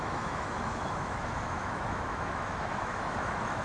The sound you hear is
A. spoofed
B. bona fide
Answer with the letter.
A